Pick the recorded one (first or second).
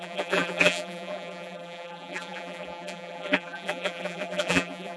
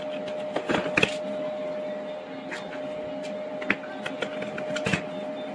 second